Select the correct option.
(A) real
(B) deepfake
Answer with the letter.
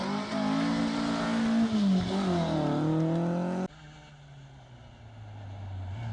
A